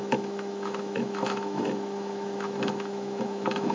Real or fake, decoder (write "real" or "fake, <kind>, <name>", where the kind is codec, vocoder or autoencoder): fake, autoencoder, DAC-VAE